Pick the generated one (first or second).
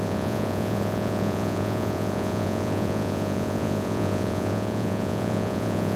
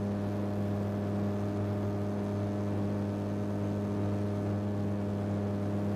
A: first